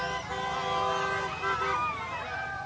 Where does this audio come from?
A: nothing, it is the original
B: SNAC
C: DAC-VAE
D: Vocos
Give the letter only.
A